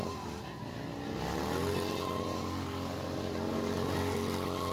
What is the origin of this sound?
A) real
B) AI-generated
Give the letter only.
A